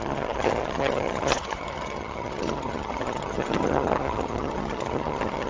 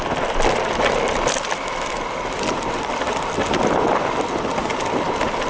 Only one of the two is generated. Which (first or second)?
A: first